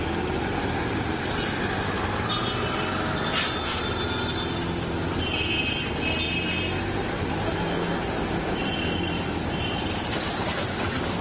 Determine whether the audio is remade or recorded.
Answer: recorded